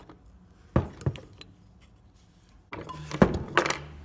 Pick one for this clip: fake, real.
real